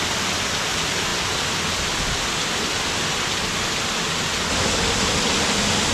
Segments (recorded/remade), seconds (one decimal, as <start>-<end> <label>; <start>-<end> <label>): 0.0-5.9 recorded